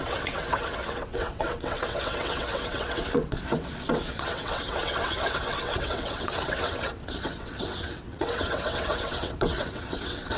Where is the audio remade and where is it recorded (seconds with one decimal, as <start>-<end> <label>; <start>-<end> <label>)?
0.0-10.4 remade